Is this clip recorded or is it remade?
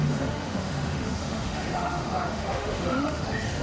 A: remade